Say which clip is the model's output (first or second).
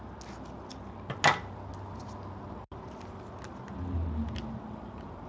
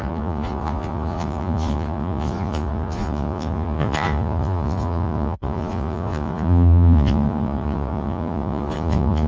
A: second